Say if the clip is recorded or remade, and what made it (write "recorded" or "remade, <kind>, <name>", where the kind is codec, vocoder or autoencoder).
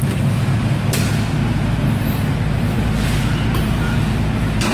recorded